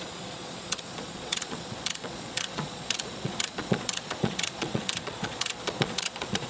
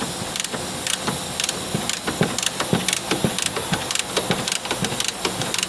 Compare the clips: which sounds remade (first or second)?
first